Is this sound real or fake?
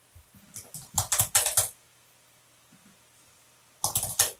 real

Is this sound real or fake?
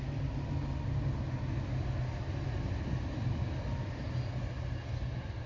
real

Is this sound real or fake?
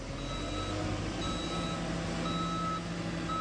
real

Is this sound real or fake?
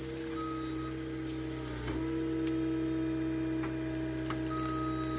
real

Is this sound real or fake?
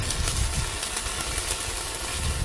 real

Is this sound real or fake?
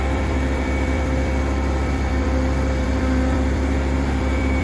fake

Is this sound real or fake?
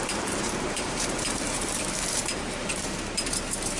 fake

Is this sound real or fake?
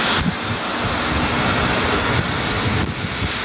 real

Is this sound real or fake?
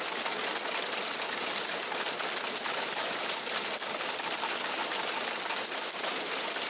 real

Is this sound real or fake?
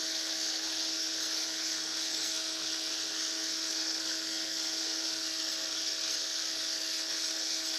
fake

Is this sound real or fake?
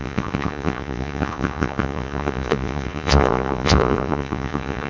fake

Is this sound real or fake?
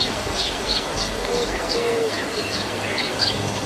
fake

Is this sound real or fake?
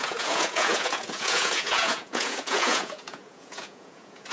fake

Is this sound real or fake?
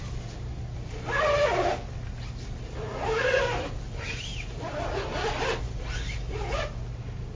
real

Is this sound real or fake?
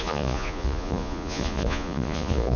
fake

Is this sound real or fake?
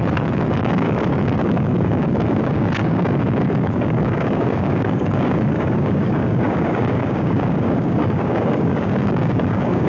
fake